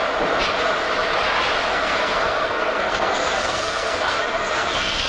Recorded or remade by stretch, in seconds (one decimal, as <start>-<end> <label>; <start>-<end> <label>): 0.0-1.7 recorded; 1.7-5.1 remade

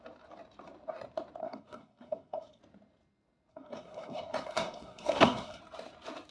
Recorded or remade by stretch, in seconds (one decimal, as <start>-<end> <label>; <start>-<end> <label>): 0.0-1.4 recorded; 1.4-2.6 remade; 2.6-3.5 recorded; 3.5-5.6 remade; 5.6-6.3 recorded

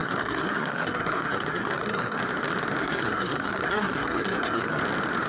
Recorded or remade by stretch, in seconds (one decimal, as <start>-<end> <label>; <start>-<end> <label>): 0.0-2.2 remade; 2.2-2.8 recorded; 2.8-4.8 remade; 4.8-5.3 recorded

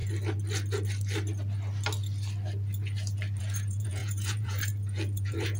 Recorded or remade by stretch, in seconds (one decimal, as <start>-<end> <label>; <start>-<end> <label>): 0.0-3.4 recorded; 3.4-5.6 remade